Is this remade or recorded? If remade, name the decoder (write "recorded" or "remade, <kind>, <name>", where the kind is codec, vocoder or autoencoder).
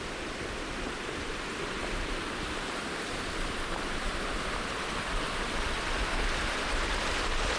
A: remade, vocoder, BigVGAN v2